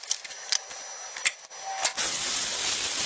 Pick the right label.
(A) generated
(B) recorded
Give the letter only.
B